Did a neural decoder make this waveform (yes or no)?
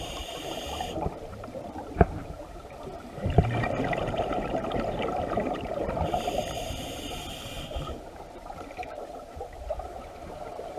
yes